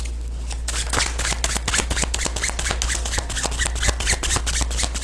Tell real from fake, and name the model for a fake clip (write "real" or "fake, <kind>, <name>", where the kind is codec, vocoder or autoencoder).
real